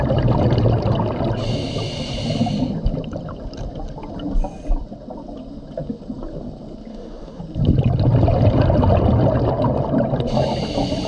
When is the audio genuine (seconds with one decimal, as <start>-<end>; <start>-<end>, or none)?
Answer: 0.0-6.9; 7.4-11.1

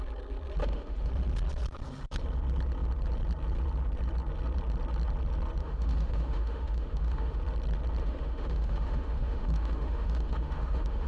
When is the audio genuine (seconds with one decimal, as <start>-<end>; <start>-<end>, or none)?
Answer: 0.0-0.6; 1.1-5.6; 7.4-8.0